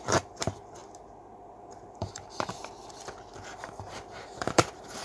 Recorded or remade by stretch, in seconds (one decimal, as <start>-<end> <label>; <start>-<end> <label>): 0.0-0.8 remade; 0.8-1.6 recorded; 1.6-2.6 remade; 2.6-3.3 recorded; 3.3-5.0 remade